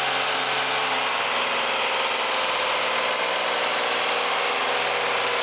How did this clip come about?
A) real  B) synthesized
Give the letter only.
A